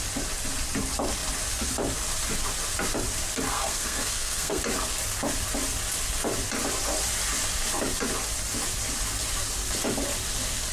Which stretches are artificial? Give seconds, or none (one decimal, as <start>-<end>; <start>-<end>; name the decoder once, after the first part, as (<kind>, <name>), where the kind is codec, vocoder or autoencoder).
3.5-4.6 (codec, SNAC)